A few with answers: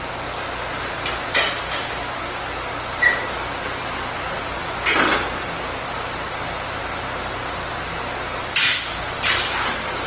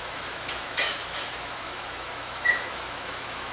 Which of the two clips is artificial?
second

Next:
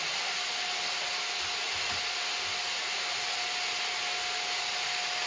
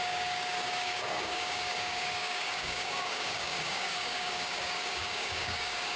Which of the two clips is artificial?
second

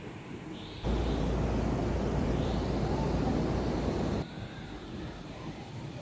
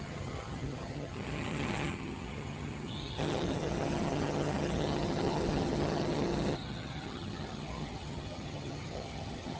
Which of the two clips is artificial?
second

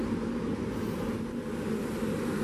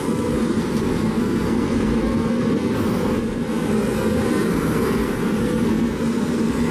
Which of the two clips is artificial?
second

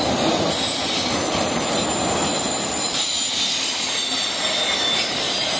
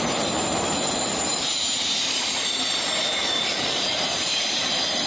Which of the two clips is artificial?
second